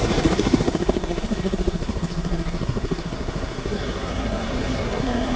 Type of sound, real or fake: fake